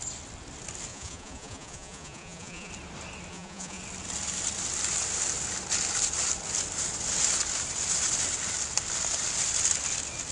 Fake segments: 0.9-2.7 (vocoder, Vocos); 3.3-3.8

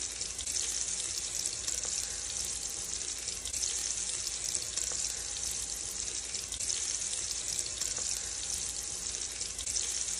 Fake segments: 0.0-3.8 (vocoder, BigVGAN v2); 4.9-10.2